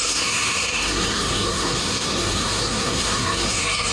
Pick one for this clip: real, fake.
fake